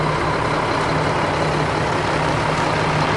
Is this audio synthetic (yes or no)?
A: no